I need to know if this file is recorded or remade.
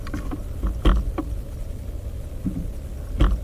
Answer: recorded